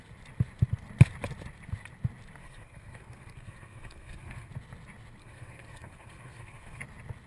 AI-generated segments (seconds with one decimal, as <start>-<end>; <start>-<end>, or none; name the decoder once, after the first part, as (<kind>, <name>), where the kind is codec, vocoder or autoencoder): 2.4-4.5 (codec, SNAC); 5.2-6.8